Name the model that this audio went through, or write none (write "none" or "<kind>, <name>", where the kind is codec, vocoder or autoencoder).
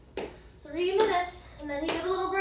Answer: none